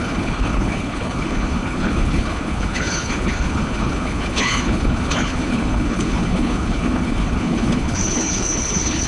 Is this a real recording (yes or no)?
no